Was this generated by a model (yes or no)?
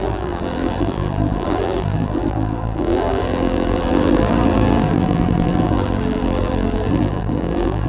yes